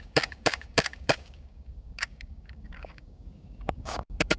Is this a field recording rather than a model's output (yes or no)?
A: no